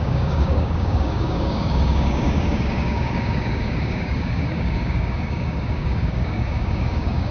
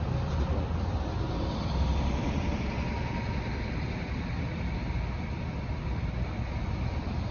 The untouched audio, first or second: second